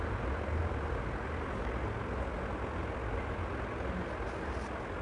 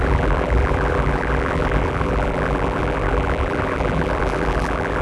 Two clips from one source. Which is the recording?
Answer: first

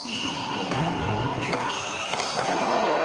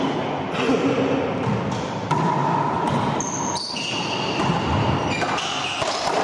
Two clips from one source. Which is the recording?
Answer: second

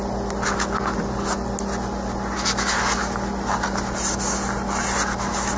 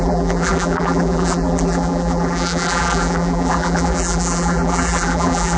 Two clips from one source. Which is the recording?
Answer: first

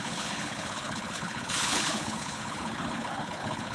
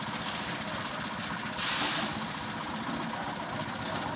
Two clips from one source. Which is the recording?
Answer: second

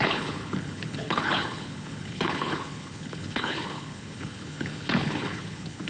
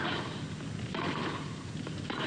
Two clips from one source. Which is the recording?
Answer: second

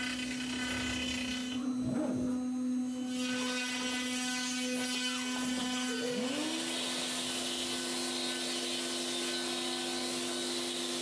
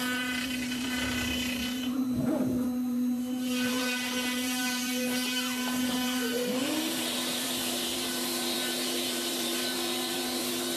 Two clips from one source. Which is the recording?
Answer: first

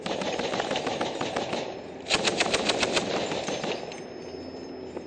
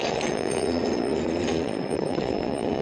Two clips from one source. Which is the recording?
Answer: first